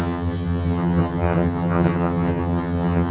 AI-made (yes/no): yes